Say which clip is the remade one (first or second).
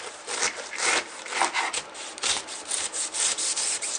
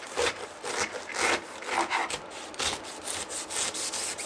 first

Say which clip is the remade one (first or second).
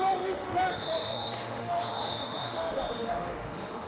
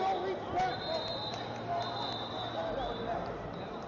first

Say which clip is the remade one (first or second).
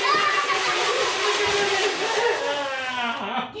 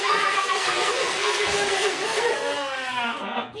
second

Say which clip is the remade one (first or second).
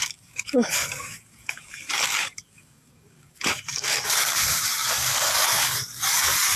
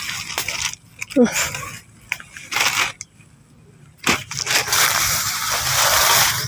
first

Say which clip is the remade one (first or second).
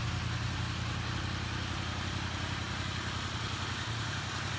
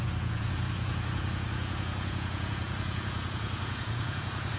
second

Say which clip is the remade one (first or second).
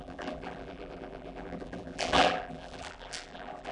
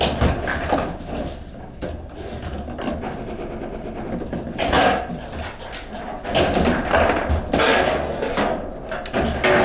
first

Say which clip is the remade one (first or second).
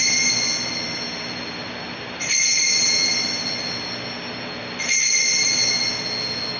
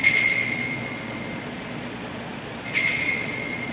second